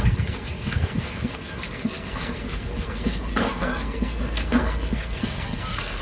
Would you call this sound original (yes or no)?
no